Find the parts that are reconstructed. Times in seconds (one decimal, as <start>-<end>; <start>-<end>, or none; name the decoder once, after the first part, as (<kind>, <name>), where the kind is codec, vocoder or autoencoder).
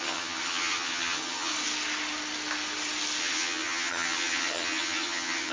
0.0-1.5 (vocoder, HiFi-GAN); 3.2-5.5